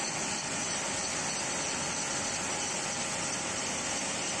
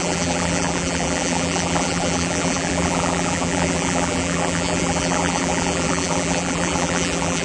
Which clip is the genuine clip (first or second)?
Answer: first